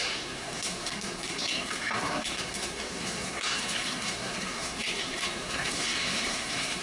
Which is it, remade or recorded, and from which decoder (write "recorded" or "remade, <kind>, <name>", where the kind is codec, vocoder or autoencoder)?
remade, codec, SNAC